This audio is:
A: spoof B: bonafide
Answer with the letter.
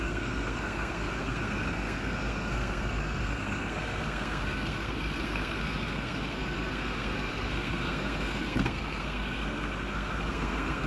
A